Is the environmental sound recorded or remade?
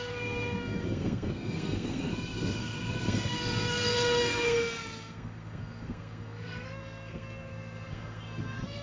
remade